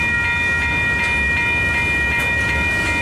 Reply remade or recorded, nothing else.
recorded